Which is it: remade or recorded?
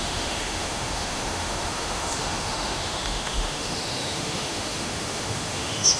remade